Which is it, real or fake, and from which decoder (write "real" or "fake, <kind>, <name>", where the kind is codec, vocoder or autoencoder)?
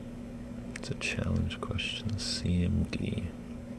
fake, codec, DAC